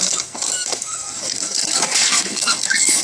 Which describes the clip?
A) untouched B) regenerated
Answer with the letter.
B